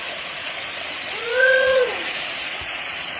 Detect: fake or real fake